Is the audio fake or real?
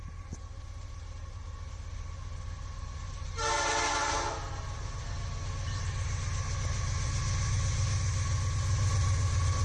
real